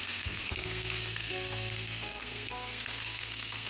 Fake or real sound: fake